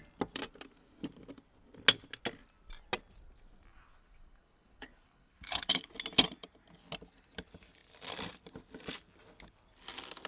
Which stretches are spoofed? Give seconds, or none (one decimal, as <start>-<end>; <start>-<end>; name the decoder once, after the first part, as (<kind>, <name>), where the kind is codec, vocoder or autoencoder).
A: 3.7-5.9 (codec, HILCodec)